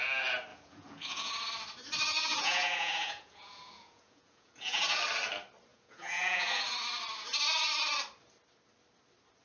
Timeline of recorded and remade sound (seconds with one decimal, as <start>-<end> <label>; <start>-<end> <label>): 0.0-0.5 recorded; 0.5-1.3 remade; 1.3-2.1 recorded; 2.1-5.0 remade; 5.0-5.7 recorded; 5.7-6.6 remade; 6.6-9.4 recorded